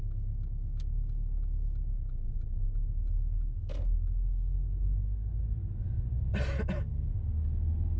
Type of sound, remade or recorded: recorded